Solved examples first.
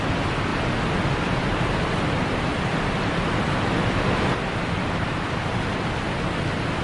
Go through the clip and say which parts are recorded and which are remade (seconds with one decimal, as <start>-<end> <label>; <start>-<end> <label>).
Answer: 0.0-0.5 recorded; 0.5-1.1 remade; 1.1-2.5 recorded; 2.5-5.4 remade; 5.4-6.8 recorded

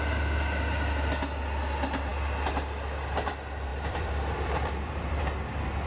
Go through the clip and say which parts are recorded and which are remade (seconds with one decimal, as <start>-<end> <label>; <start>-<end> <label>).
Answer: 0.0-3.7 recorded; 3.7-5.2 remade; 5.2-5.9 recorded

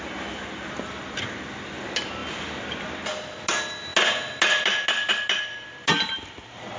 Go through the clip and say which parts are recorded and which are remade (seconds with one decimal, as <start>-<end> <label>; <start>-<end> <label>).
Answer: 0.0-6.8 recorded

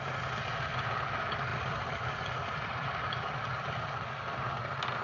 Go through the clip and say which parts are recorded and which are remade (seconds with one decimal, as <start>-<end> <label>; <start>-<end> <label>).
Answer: 0.0-1.5 recorded; 1.5-4.5 remade; 4.5-5.0 recorded